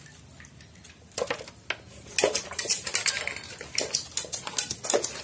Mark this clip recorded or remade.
recorded